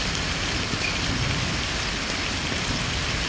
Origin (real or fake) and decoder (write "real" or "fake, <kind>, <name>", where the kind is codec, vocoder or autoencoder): real